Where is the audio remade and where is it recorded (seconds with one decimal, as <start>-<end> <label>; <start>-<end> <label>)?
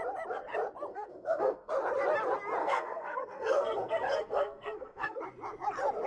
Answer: 0.0-0.9 recorded; 0.9-1.7 remade; 1.7-2.6 recorded; 2.6-5.2 remade; 5.2-6.1 recorded